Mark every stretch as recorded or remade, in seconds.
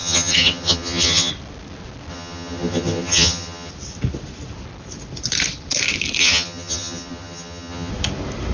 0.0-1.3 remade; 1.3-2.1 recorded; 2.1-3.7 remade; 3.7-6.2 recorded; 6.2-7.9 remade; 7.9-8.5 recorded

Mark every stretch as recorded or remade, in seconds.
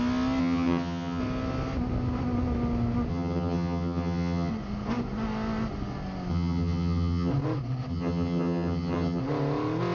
0.0-0.4 recorded; 0.4-1.2 remade; 1.2-3.1 recorded; 3.1-4.5 remade; 4.5-6.3 recorded; 6.3-7.3 remade; 7.3-7.9 recorded; 7.9-9.2 remade; 9.2-9.9 recorded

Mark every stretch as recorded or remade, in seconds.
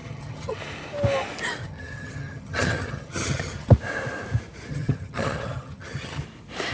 0.0-0.6 remade; 0.6-1.6 recorded; 1.6-3.7 remade; 3.7-4.7 recorded; 4.7-6.2 remade; 6.2-6.7 recorded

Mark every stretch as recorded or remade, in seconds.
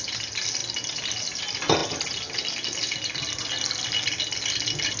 0.0-5.0 recorded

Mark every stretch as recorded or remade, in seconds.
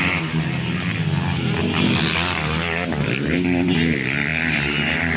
0.0-5.2 recorded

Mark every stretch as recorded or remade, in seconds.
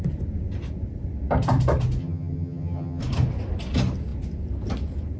0.0-2.0 recorded; 2.0-3.0 remade; 3.0-5.2 recorded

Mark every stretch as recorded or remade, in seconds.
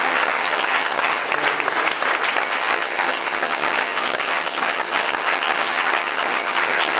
0.0-1.2 remade; 1.2-2.4 recorded; 2.4-7.0 remade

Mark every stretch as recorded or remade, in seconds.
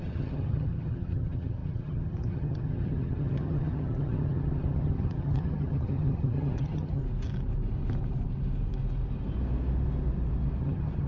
0.0-7.0 remade; 7.0-10.6 recorded; 10.6-11.1 remade